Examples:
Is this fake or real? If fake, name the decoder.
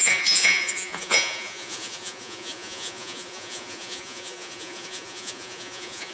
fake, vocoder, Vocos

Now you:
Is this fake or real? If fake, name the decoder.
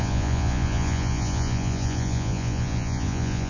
fake, vocoder, Vocos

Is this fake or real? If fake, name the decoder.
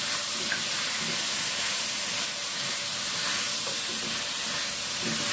real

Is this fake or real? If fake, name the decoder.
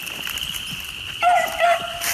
real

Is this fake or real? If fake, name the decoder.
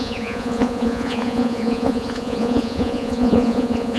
fake, vocoder, Vocos